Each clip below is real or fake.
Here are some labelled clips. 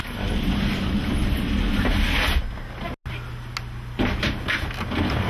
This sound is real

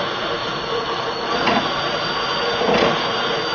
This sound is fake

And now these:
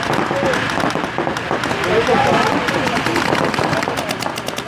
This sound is real